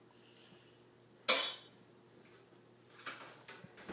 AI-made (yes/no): no